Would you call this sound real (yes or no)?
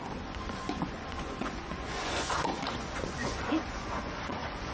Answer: no